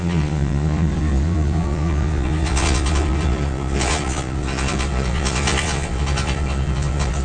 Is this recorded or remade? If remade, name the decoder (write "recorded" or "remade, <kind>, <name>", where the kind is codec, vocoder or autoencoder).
remade, vocoder, Vocos